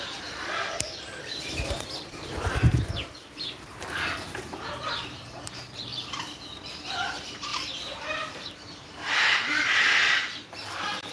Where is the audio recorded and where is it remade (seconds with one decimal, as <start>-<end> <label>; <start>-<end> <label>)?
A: 0.0-5.9 remade; 5.9-6.7 recorded; 6.7-11.1 remade

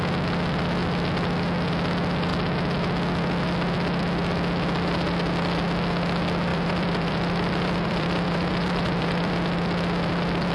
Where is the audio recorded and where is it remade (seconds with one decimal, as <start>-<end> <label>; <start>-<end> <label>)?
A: 0.0-6.5 recorded; 6.5-9.3 remade; 9.3-10.5 recorded

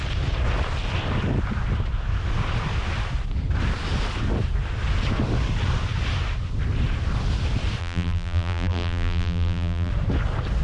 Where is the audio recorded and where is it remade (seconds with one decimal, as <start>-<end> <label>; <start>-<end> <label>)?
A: 0.0-7.8 recorded; 7.8-9.9 remade; 9.9-10.6 recorded

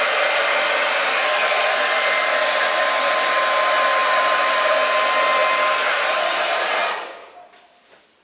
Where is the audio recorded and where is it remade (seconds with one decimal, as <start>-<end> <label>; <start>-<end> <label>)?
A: 0.0-4.0 recorded; 4.0-4.7 remade; 4.7-8.2 recorded

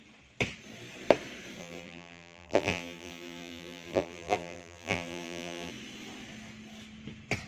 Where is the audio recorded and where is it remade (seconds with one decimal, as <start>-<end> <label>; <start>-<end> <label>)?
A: 0.0-1.6 recorded; 1.6-5.7 remade; 5.7-7.5 recorded

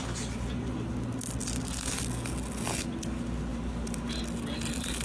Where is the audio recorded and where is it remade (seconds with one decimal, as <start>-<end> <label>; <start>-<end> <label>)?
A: 0.0-3.5 recorded; 3.5-4.2 remade; 4.2-5.0 recorded

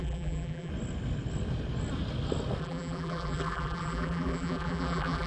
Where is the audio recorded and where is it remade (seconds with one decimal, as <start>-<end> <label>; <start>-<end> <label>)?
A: 0.0-0.7 remade; 0.7-2.6 recorded; 2.6-5.3 remade